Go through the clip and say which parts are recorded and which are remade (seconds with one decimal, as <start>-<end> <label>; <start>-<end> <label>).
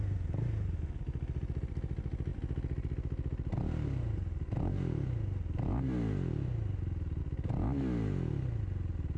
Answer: 0.0-9.2 recorded